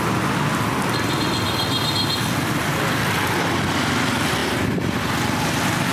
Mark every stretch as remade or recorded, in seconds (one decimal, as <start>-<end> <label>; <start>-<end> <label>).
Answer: 0.0-5.9 recorded